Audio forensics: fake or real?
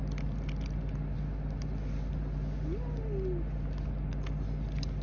real